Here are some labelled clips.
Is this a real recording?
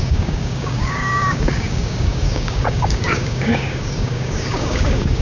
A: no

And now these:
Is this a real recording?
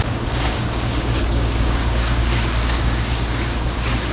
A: no